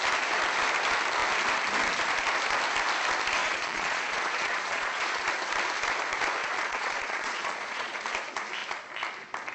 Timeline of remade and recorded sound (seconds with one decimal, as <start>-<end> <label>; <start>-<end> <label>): 0.0-3.4 recorded; 3.4-5.2 remade; 5.2-6.4 recorded; 6.4-8.0 remade; 8.0-9.5 recorded